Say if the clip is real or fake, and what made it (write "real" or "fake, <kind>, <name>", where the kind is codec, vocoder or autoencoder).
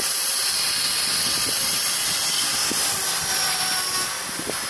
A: fake, vocoder, BigVGAN v2